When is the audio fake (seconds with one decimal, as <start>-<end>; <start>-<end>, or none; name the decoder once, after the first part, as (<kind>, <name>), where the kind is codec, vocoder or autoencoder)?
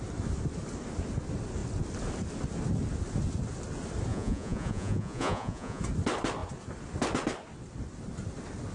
4.1-5.8 (vocoder, Vocos)